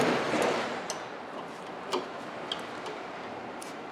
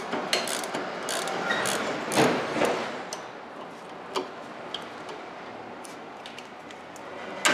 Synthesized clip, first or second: first